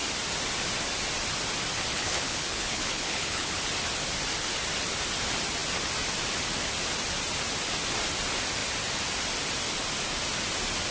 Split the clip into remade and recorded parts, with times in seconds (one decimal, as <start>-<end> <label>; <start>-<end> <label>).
0.0-1.9 recorded; 1.9-3.6 remade; 3.6-10.9 recorded